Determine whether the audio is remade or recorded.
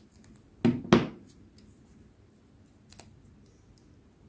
recorded